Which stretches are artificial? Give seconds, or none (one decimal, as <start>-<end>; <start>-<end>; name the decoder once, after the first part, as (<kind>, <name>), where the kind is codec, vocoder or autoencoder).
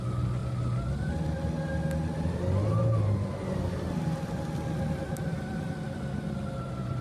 none